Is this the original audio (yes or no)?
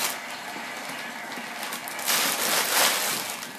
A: yes